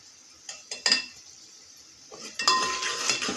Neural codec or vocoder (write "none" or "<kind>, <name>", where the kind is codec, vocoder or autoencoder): none